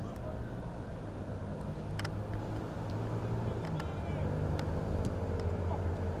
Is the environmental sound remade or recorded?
recorded